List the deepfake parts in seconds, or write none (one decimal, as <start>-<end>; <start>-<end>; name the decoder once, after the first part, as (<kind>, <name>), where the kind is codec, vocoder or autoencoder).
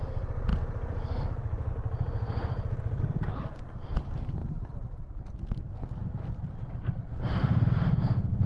none